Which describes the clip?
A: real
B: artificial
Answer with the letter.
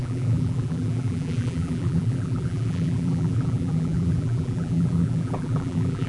B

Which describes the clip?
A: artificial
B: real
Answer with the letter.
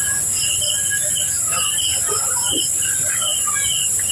B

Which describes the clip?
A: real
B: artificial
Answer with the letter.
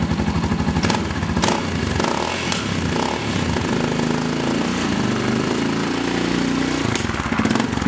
A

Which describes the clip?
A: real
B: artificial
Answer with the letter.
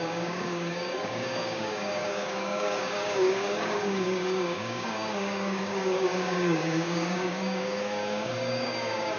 B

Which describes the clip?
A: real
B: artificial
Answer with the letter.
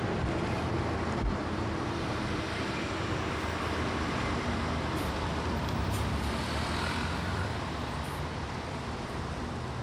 B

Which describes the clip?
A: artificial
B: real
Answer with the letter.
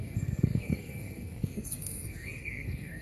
A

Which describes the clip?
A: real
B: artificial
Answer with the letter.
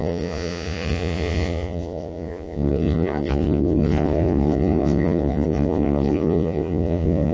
B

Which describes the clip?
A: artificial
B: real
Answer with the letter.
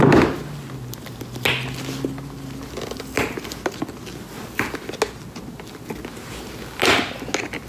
B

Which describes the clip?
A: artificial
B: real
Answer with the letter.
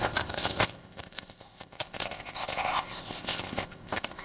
A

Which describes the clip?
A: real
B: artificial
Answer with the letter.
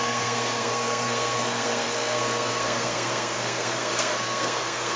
B